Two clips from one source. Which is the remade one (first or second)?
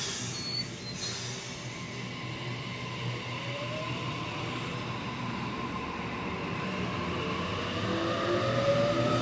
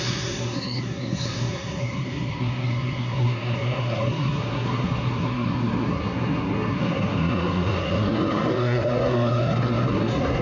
second